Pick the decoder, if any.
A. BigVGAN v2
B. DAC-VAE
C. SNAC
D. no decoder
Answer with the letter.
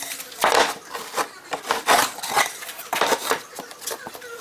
D